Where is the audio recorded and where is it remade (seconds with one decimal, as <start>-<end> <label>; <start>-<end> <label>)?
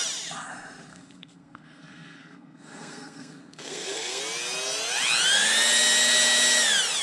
0.0-0.9 recorded; 0.9-4.2 remade; 4.2-7.0 recorded